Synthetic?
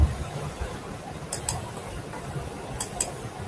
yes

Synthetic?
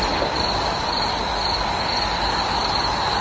no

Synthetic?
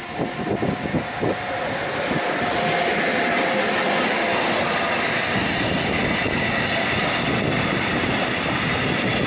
no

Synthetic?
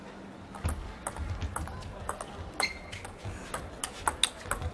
no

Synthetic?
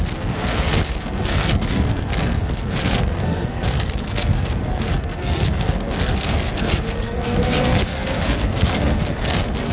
yes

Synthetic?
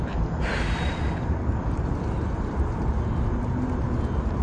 no